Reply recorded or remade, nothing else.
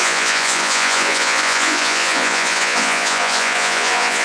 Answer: remade